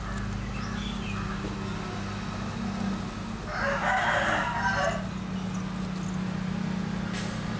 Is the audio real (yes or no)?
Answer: yes